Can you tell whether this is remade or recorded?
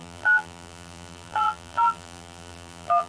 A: remade